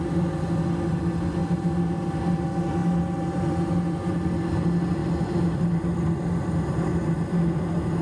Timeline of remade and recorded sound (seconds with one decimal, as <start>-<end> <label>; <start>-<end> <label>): 0.0-8.0 recorded